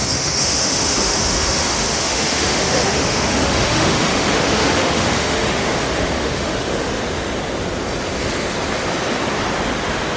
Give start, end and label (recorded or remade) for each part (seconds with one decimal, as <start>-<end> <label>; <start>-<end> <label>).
0.0-7.0 remade; 7.0-10.2 recorded